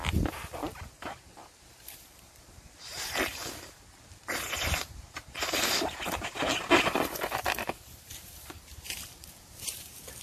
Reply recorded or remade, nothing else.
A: remade